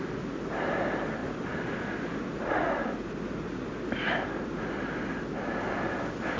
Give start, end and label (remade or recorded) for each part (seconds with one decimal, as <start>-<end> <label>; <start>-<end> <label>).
0.0-6.4 recorded